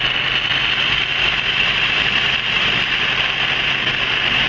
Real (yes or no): no